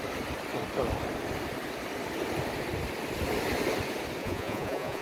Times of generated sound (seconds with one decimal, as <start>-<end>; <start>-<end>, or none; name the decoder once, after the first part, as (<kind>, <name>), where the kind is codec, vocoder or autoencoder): 4.2-5.0 (vocoder, Vocos)